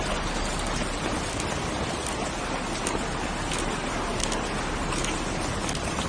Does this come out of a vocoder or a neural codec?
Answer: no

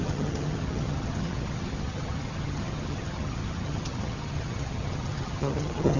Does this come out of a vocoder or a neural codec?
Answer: yes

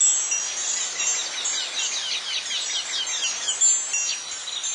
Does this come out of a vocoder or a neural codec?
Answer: no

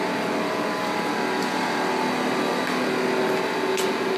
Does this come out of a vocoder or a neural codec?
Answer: no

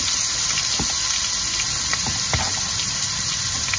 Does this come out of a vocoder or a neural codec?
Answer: no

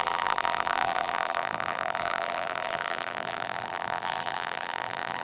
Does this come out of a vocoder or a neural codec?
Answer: yes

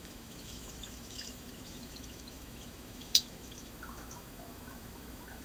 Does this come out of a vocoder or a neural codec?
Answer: yes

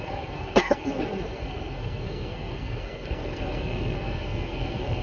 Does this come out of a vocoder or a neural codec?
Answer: yes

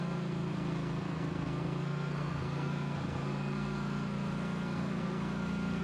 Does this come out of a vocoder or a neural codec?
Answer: yes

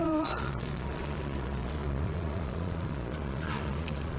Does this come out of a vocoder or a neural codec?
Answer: yes